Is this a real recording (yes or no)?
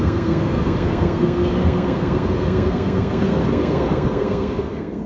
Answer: no